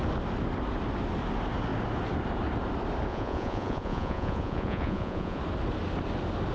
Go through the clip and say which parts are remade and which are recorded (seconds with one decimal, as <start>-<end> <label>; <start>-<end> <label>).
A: 0.0-3.1 recorded; 3.1-5.4 remade; 5.4-6.5 recorded